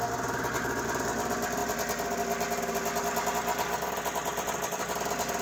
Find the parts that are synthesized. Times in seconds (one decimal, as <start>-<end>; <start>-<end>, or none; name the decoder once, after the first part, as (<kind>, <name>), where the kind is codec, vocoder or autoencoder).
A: none